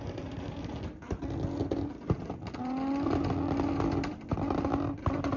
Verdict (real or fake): real